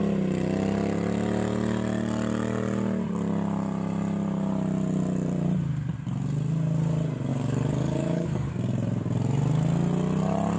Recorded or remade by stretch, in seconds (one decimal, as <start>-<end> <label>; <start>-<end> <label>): 0.0-7.3 recorded; 7.3-8.5 remade; 8.5-10.6 recorded